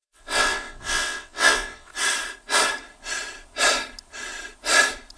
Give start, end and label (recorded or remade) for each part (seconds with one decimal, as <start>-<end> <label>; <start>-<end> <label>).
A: 0.0-1.9 remade; 1.9-5.2 recorded